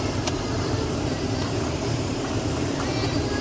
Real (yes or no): no